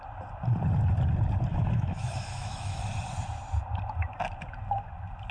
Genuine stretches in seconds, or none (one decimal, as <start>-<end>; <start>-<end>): 0.0-1.5; 2.8-5.3